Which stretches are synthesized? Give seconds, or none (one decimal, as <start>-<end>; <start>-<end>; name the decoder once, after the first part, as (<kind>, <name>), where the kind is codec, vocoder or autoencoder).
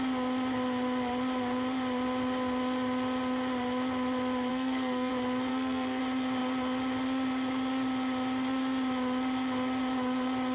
4.5-5.1 (codec, SNAC); 5.5-6.0